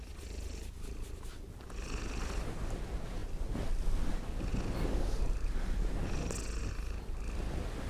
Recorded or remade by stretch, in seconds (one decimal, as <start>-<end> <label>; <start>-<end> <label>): 0.0-7.9 recorded